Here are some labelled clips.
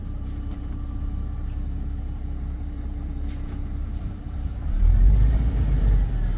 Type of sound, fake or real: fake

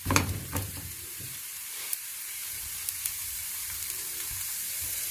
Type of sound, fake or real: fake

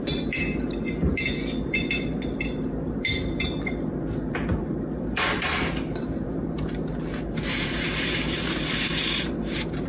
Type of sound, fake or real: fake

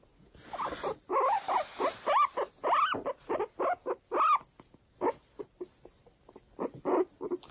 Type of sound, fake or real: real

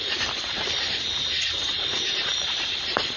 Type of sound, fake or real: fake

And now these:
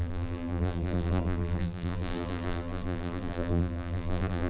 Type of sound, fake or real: fake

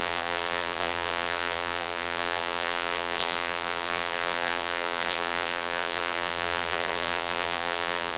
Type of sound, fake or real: fake